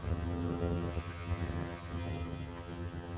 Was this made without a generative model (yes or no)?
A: no